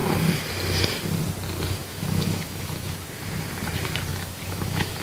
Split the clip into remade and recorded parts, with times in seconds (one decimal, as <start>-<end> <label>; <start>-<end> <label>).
0.0-1.8 recorded; 1.8-3.3 remade; 3.3-4.1 recorded; 4.1-5.0 remade